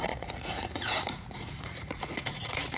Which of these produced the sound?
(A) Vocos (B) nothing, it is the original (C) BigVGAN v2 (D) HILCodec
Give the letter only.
A